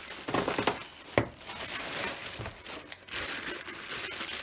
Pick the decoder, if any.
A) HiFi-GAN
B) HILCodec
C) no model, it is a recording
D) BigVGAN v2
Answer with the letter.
C